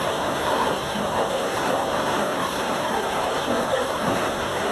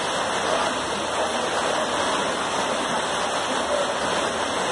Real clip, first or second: second